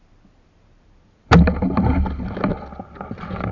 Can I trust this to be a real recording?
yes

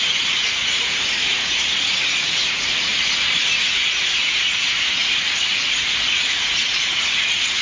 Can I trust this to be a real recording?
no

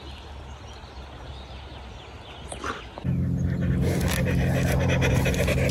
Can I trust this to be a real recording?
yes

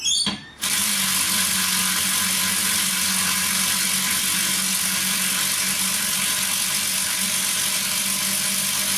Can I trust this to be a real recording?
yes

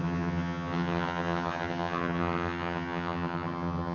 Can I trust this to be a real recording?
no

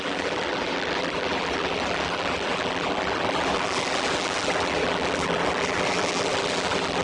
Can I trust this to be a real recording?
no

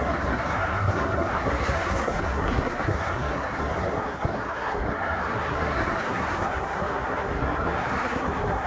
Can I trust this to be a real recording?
no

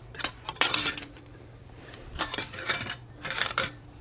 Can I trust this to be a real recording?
no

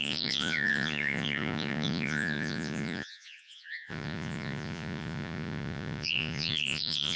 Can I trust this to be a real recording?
no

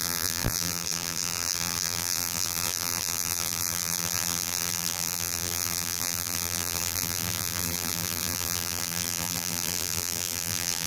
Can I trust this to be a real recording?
no